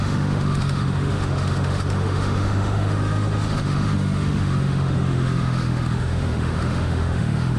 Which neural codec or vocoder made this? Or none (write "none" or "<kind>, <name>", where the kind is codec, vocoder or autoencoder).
autoencoder, DAC-VAE